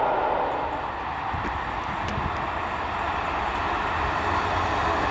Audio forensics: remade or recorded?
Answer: recorded